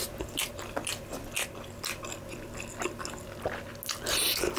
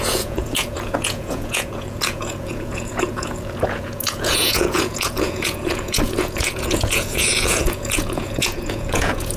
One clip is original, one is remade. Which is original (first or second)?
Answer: first